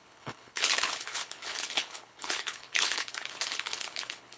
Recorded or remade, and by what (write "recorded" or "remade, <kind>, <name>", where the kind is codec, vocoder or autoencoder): remade, codec, HILCodec